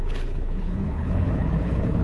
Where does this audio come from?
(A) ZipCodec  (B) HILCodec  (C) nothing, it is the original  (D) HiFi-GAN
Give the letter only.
B